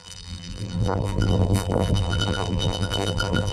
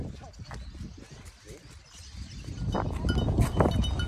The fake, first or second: first